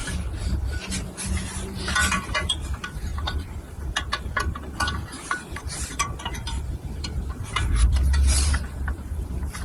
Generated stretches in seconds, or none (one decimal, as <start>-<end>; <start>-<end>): 1.5-9.6